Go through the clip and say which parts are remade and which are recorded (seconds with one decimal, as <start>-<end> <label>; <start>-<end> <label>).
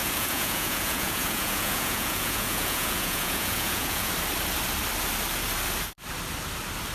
0.0-4.1 remade; 4.1-6.9 recorded